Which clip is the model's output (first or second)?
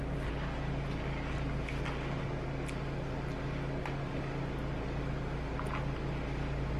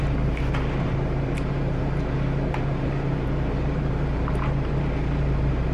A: second